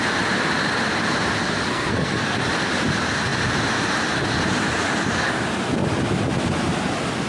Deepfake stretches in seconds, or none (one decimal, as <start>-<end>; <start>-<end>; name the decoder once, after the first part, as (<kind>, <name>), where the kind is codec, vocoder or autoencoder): 1.7-2.4 (codec, SNAC)